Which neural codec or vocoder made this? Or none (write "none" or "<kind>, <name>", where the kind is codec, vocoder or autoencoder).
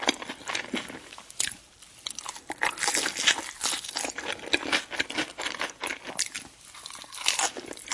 none